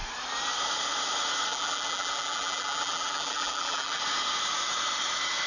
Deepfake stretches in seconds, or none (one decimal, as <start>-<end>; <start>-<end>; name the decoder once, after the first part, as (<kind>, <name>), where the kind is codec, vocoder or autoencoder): 1.5-4.0 (vocoder, BigVGAN v2)